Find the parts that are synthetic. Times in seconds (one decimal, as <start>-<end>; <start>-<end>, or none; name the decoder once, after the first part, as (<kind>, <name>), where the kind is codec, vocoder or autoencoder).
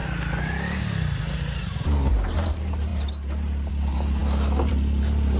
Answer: none